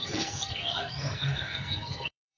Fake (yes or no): yes